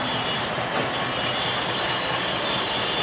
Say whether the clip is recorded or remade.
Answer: recorded